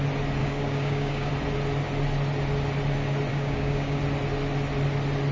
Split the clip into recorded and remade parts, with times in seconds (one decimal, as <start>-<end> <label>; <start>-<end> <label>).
0.0-0.4 recorded; 0.4-1.3 remade; 1.3-3.3 recorded; 3.3-4.0 remade; 4.0-5.3 recorded